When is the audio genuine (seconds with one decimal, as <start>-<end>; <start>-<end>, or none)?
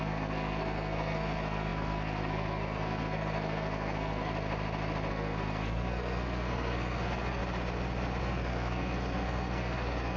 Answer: 4.3-5.1; 7.4-8.2